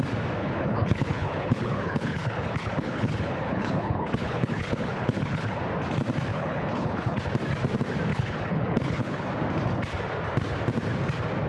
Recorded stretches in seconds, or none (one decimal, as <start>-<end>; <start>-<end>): 0.0-0.4; 5.6-6.3; 7.2-8.1; 9.3-11.5